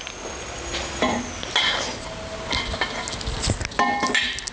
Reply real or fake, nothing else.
real